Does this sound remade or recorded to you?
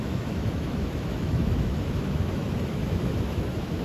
remade